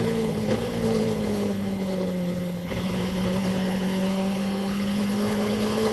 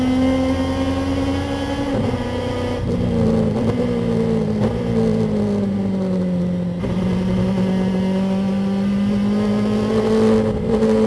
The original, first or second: second